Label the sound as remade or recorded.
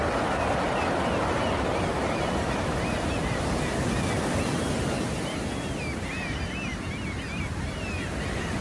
recorded